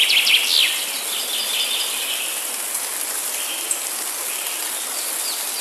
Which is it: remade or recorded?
recorded